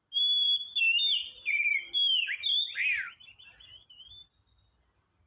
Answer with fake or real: real